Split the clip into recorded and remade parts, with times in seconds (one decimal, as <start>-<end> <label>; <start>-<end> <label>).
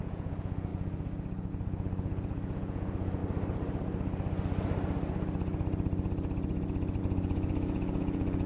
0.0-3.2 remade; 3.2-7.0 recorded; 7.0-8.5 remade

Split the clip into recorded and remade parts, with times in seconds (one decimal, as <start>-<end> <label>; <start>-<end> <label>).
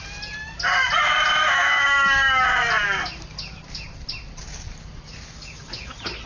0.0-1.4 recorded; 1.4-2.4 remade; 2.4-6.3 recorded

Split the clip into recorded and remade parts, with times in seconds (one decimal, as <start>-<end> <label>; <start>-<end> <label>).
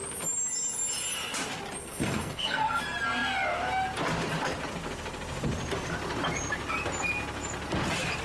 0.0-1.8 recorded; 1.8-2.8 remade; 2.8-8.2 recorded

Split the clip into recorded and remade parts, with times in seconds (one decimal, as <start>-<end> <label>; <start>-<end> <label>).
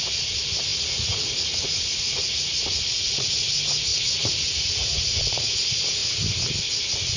0.0-0.7 recorded; 0.7-3.3 remade; 3.3-3.9 recorded; 3.9-5.5 remade; 5.5-7.2 recorded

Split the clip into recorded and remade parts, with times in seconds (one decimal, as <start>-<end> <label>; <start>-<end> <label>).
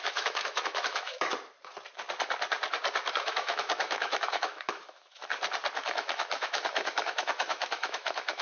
0.0-1.3 remade; 1.3-3.1 recorded; 3.1-5.2 remade; 5.2-5.8 recorded; 5.8-8.4 remade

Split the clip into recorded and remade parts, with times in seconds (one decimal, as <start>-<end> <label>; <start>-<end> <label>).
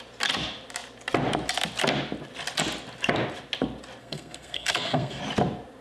0.0-4.0 recorded; 4.0-5.2 remade; 5.2-5.8 recorded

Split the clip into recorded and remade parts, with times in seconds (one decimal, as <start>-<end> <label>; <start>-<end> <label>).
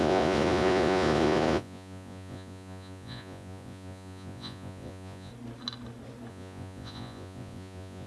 0.0-5.3 remade; 5.3-6.3 recorded; 6.3-8.1 remade